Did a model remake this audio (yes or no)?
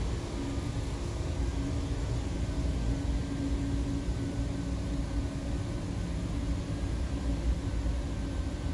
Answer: no